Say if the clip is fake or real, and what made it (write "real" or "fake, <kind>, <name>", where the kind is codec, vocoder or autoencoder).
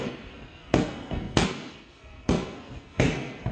fake, codec, SNAC